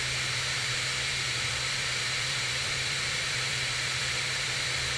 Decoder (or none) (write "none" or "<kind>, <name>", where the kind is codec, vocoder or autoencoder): vocoder, BigVGAN v2